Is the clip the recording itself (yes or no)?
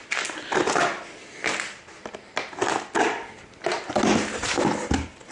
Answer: yes